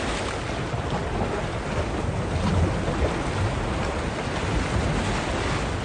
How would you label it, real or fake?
real